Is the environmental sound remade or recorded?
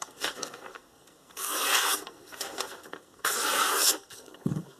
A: remade